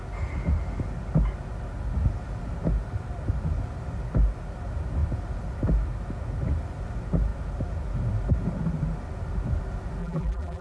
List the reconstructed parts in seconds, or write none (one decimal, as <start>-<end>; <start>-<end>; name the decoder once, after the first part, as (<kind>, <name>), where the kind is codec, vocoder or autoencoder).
10.0-10.6 (vocoder, BigVGAN v2)